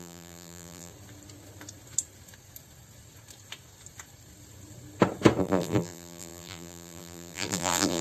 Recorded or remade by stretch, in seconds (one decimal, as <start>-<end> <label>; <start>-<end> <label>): 0.0-0.9 remade; 0.9-5.4 recorded; 5.4-8.0 remade